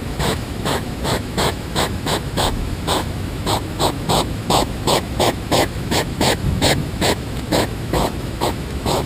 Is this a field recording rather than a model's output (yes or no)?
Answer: no